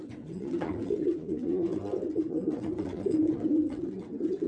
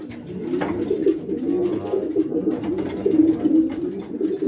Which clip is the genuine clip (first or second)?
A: second